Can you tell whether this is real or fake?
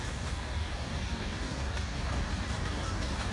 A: fake